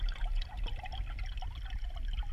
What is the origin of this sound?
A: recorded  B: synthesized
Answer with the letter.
A